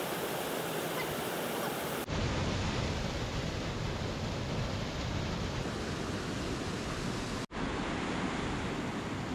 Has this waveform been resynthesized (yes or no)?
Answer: no